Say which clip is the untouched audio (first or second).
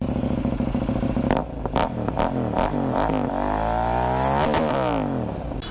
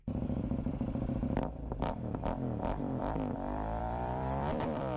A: first